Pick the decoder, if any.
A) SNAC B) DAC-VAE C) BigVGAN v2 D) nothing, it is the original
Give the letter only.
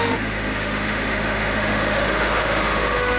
B